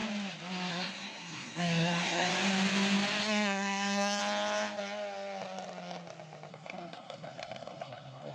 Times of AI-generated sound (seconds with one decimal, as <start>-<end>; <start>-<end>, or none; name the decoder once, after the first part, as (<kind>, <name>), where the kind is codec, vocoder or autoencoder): 0.7-2.3 (codec, SNAC); 3.2-4.2; 6.5-8.3